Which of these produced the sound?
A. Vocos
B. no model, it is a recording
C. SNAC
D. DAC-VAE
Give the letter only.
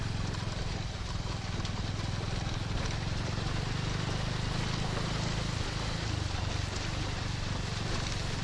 B